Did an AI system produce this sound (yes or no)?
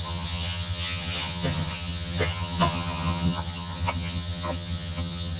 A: yes